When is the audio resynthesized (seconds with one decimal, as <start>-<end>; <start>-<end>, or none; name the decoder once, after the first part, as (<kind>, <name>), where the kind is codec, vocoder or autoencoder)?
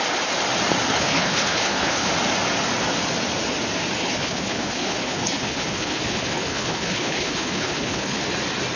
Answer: 0.9-2.1 (codec, HILCodec); 4.0-8.2